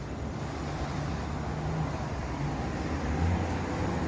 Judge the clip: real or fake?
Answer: real